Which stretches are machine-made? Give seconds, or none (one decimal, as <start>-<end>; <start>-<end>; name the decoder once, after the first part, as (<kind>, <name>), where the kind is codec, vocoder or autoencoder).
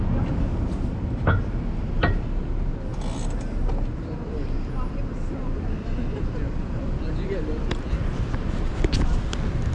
none